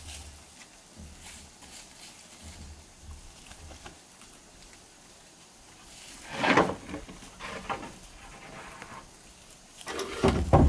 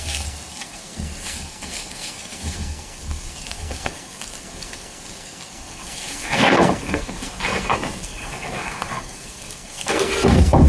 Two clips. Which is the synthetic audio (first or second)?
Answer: second